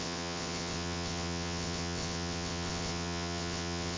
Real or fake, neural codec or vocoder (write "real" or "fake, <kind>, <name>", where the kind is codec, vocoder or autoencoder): fake, vocoder, WaveNeXt